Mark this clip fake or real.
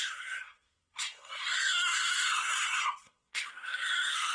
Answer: fake